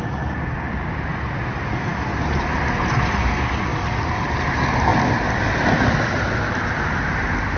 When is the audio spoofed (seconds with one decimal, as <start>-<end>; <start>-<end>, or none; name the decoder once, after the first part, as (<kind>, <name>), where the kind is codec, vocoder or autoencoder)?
3.7-4.5 (vocoder, BigVGAN v2); 4.9-7.6

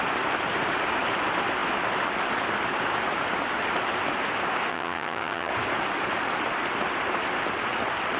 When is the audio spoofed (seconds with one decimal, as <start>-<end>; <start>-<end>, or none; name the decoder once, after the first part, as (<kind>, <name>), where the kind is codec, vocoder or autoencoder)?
4.7-5.5 (vocoder, HiFi-GAN)

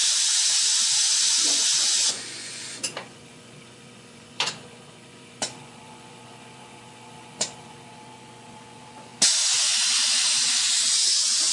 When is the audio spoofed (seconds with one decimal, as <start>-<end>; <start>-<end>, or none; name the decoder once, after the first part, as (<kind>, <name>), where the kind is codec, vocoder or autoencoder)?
0.0-9.1 (vocoder, Vocos); 10.8-11.5